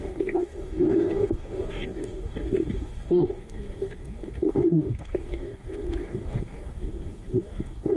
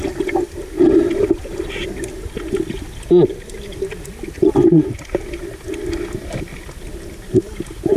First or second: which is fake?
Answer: first